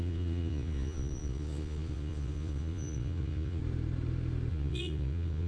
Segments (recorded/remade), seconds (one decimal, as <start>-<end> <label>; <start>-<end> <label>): 0.0-3.6 remade; 3.6-4.5 recorded; 4.5-5.5 remade